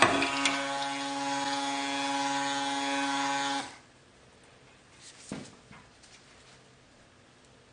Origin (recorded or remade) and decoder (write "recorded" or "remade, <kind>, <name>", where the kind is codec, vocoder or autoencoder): recorded